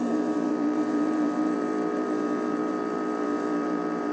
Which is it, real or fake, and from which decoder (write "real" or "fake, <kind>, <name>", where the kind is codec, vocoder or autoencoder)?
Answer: fake, vocoder, BigVGAN v2